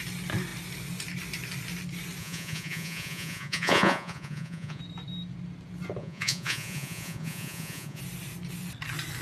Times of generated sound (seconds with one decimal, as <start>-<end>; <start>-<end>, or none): 2.2-4.8; 6.0-8.0